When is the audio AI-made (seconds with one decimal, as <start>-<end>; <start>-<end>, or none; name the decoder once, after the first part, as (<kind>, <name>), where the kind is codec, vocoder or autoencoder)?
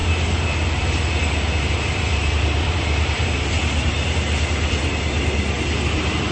none